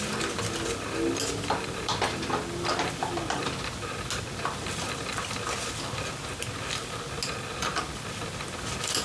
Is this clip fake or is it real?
real